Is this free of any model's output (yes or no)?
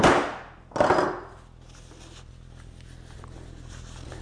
yes